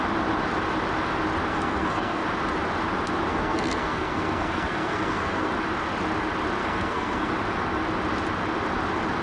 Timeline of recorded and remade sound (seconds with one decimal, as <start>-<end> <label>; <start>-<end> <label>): 0.0-1.5 recorded; 1.5-2.2 remade; 2.2-3.3 recorded; 3.3-5.5 remade; 5.5-6.6 recorded; 6.6-7.3 remade; 7.3-9.2 recorded